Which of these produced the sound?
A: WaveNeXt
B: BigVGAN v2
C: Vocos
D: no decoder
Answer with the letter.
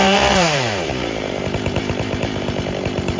B